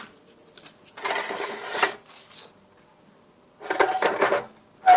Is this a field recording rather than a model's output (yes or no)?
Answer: yes